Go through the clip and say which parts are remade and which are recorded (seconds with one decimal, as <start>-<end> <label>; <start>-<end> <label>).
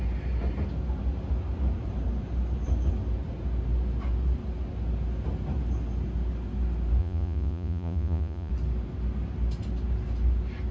0.0-7.0 recorded; 7.0-8.5 remade; 8.5-10.7 recorded